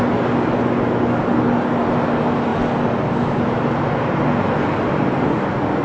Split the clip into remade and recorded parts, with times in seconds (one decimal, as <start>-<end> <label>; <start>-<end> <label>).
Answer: 0.0-5.8 recorded